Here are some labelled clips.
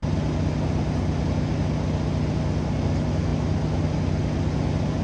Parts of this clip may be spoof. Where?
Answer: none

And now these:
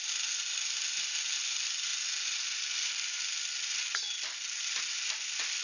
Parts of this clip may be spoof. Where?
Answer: none

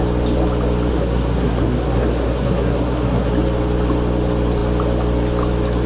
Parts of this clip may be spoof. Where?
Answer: 0.9-3.3 (codec, SNAC)

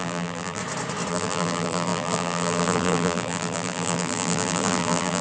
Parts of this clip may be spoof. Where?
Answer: 0.0-0.6 (vocoder, BigVGAN v2); 1.1-5.2

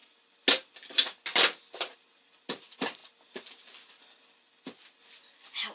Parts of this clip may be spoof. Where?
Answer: none